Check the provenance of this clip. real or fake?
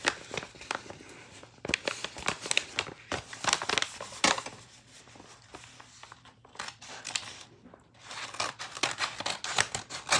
real